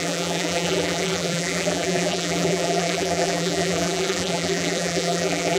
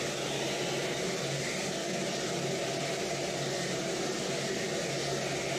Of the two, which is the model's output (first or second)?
first